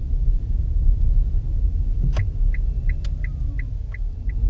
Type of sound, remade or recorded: recorded